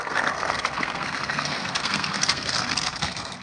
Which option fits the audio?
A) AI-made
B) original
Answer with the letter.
A